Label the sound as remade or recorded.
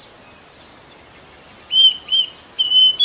recorded